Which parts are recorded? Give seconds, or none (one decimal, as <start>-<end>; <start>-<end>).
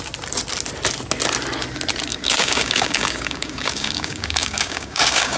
0.0-2.1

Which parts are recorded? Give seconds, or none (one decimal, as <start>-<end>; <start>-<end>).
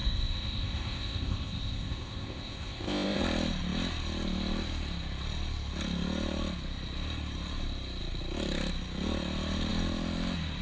3.2-10.6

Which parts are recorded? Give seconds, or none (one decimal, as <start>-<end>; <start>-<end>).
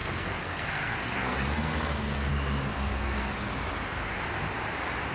2.3-2.7; 3.3-5.1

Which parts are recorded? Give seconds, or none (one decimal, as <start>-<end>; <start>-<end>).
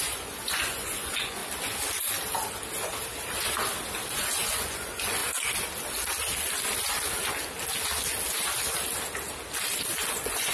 1.4-4.1; 5.2-10.1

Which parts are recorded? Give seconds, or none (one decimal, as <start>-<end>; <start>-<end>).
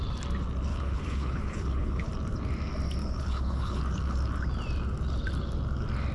0.0-0.7; 2.1-3.0; 3.8-6.1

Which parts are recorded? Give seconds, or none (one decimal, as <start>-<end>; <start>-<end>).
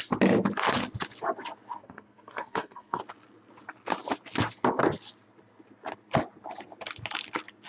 0.0-1.8; 3.0-7.7